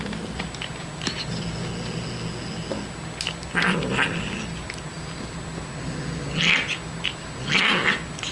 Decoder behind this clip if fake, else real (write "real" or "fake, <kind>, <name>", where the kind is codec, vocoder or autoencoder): real